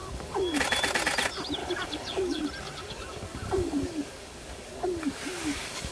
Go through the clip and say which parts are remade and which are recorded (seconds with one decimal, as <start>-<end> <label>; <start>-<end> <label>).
0.0-0.5 remade; 0.5-1.6 recorded; 1.6-2.4 remade; 2.4-2.8 recorded; 2.8-5.9 remade